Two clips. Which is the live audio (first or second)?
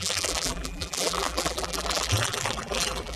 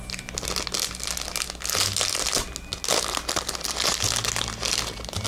second